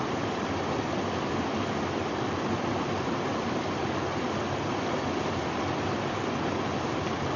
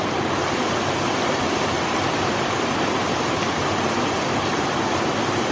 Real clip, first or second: first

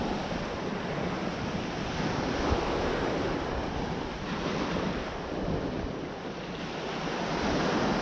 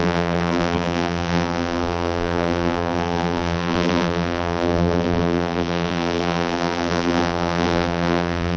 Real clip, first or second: first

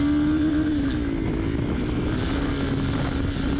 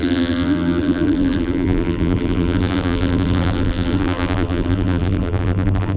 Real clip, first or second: first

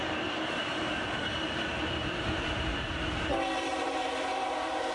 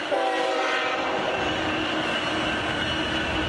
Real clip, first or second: second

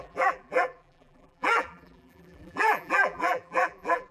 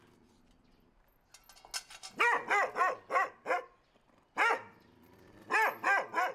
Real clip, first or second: second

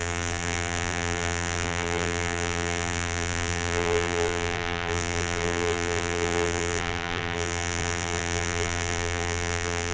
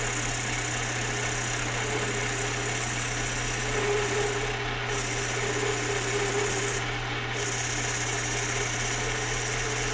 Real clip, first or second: second